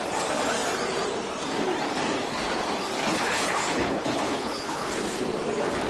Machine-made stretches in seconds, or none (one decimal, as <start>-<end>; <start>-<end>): 3.0-4.9